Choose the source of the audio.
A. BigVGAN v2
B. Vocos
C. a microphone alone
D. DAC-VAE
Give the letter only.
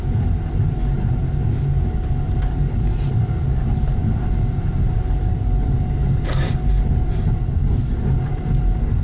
C